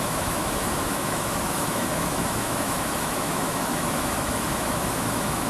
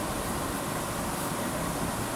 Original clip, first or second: second